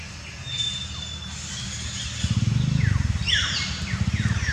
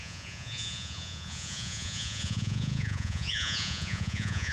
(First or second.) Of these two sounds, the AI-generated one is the second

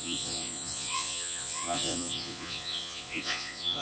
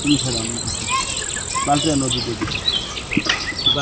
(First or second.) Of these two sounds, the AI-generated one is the first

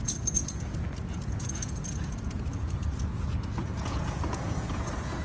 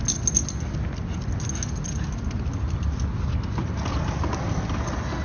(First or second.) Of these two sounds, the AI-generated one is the first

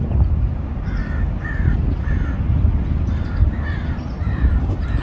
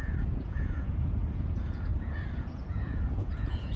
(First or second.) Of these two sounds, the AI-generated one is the second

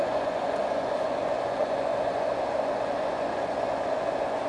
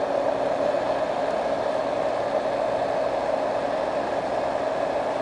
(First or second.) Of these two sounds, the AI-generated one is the first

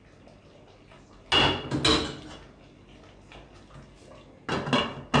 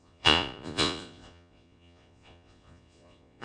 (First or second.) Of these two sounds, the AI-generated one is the second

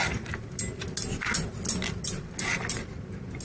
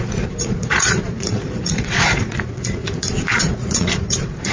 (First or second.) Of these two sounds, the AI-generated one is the second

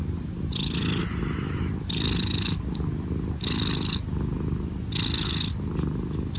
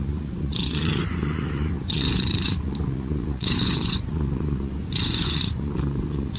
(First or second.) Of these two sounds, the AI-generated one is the second